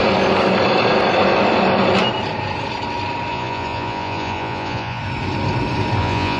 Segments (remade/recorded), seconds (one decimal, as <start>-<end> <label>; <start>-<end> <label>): 0.0-3.3 recorded; 3.3-5.0 remade; 5.0-6.0 recorded; 6.0-6.4 remade